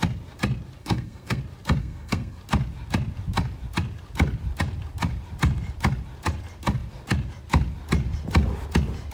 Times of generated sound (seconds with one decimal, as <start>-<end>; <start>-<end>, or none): 0.8-1.4; 1.8-2.4